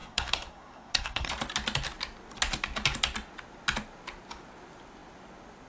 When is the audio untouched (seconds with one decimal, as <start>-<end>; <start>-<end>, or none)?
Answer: 1.3-5.7